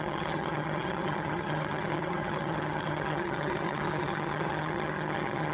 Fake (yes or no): yes